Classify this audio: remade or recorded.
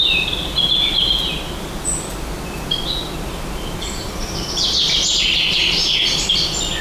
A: recorded